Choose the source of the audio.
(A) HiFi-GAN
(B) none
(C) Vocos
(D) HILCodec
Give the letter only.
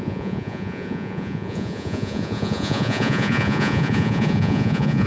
C